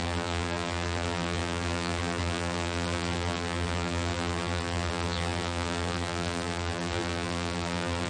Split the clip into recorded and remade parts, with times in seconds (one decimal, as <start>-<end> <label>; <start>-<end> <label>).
0.0-8.1 remade